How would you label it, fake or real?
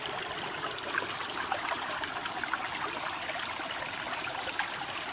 real